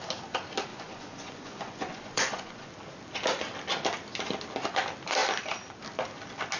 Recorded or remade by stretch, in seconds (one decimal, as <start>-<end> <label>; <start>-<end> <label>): 0.0-0.7 recorded; 0.7-2.7 remade; 2.7-6.6 recorded